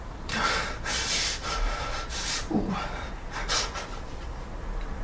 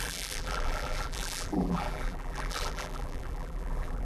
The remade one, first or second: second